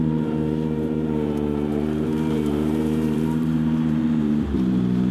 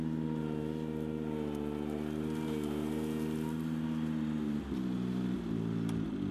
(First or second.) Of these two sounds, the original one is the second